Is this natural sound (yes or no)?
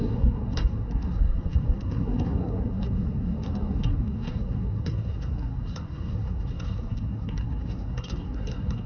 no